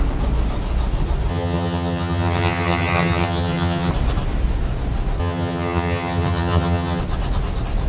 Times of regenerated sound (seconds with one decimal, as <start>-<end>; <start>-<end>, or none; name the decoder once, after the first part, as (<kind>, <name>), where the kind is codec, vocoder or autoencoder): 1.3-3.9 (vocoder, HiFi-GAN); 5.2-7.0